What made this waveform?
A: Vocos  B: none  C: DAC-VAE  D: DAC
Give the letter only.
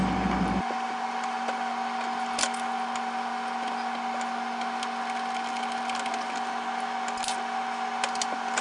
B